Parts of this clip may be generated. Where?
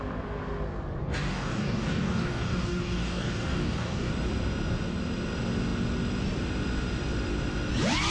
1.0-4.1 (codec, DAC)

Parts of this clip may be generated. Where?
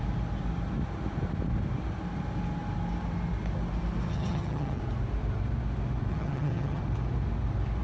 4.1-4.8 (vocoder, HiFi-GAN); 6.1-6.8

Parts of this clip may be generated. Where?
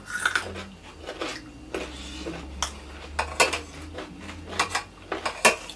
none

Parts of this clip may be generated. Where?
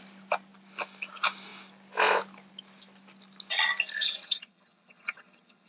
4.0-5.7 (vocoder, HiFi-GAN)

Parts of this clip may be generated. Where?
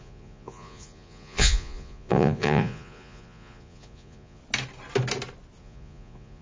0.0-4.4 (vocoder, Vocos); 5.6-6.4